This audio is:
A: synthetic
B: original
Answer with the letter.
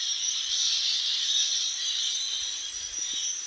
B